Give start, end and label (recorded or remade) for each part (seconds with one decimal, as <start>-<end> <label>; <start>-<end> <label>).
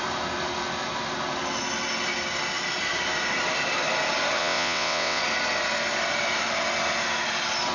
0.0-4.4 recorded; 4.4-5.2 remade; 5.2-7.7 recorded